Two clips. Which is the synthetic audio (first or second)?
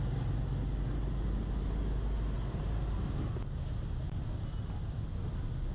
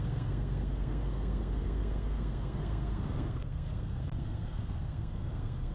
second